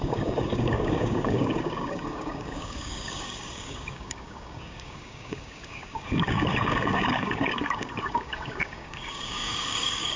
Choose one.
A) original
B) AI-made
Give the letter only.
B